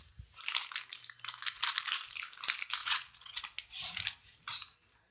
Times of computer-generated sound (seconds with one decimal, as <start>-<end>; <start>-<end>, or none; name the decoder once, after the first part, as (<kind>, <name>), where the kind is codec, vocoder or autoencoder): 2.8-3.4 (vocoder, WaveNeXt)